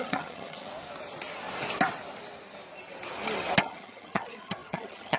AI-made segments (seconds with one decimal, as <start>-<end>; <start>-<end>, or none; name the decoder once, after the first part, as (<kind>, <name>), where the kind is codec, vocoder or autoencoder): 0.0-0.7 (vocoder, HiFi-GAN); 3.6-5.2

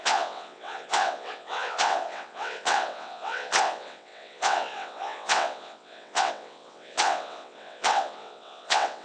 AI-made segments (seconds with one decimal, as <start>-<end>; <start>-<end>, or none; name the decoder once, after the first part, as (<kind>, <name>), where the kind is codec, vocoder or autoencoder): 0.0-9.0 (vocoder, WaveNeXt)

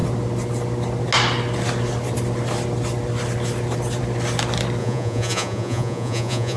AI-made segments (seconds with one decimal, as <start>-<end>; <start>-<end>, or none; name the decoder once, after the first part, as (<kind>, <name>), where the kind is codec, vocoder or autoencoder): 4.8-6.6 (vocoder, Vocos)